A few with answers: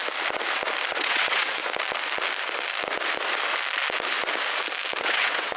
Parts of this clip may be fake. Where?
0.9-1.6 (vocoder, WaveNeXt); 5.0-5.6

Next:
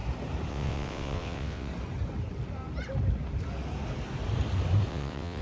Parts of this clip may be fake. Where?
0.5-1.7 (vocoder, WaveNeXt); 4.9-5.4